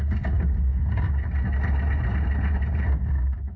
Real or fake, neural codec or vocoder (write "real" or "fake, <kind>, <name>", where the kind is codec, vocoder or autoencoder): real